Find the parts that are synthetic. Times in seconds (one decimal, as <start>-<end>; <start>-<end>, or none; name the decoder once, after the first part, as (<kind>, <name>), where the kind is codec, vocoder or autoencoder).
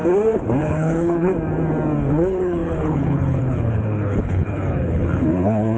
0.6-1.3 (codec, HILCodec); 2.1-5.8